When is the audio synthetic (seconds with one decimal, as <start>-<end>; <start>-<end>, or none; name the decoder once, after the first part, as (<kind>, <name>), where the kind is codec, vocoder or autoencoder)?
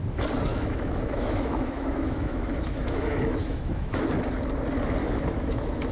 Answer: 0.5-4.0 (autoencoder, DAC-VAE); 5.0-5.9